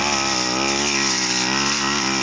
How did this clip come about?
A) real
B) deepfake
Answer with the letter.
A